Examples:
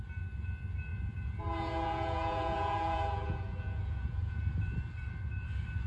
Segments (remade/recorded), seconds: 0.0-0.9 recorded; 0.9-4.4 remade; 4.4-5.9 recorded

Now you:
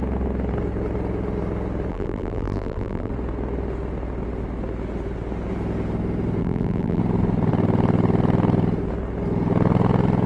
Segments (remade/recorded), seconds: 0.0-1.9 recorded; 1.9-3.1 remade; 3.1-6.4 recorded; 6.4-7.0 remade; 7.0-10.3 recorded

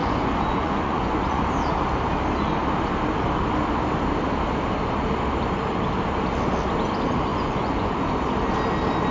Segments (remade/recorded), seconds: 0.0-1.4 remade; 1.4-7.3 recorded; 7.3-8.1 remade; 8.1-9.1 recorded

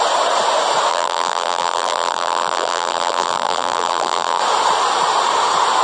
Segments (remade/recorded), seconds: 0.0-0.9 recorded; 0.9-4.4 remade; 4.4-5.8 recorded

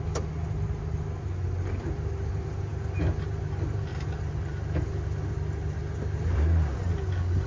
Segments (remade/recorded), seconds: 0.0-7.5 recorded